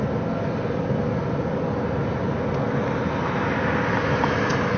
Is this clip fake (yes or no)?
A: no